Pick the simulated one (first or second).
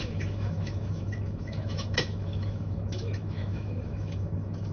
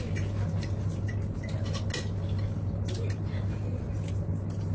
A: first